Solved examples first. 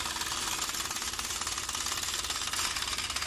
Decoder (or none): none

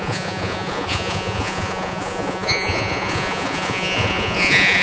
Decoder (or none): vocoder, Vocos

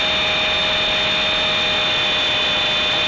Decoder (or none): none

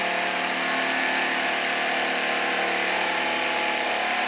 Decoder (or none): none